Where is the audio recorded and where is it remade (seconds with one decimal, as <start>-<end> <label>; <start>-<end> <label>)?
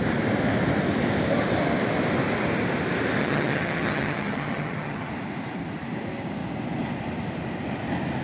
0.0-3.2 recorded; 3.2-5.1 remade; 5.1-8.2 recorded